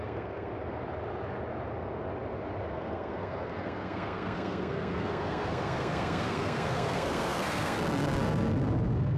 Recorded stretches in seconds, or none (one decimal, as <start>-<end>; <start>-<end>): 0.5-2.7

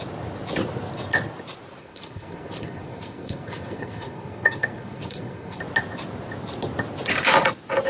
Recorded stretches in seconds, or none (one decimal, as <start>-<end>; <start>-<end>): 0.0-1.8; 5.6-7.9